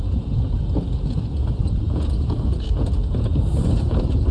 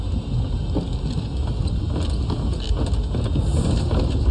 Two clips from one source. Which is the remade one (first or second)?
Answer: first